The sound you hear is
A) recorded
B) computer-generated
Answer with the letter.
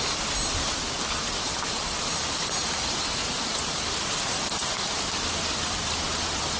A